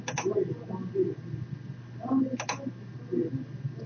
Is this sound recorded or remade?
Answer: recorded